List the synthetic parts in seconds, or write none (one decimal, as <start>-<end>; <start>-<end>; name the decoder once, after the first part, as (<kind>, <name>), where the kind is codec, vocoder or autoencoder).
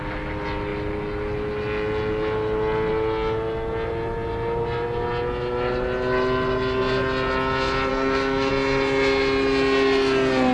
7.9-8.5 (codec, SNAC)